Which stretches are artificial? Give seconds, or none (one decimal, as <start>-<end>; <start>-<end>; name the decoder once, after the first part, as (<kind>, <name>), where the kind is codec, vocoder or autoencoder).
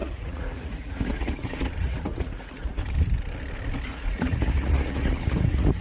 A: 0.0-2.8 (vocoder, Vocos); 3.9-5.8